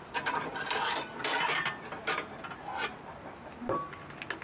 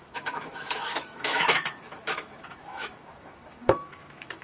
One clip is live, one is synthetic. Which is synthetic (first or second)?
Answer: second